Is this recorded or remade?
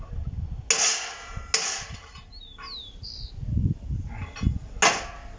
recorded